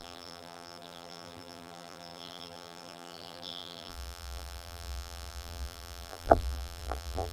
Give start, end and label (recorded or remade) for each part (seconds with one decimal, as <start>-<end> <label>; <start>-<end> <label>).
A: 0.0-7.3 remade